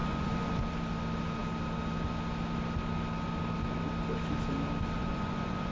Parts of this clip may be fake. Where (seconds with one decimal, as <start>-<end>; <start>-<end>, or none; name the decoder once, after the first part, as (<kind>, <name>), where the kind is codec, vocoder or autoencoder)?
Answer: 0.0-0.6 (vocoder, Vocos); 5.0-5.7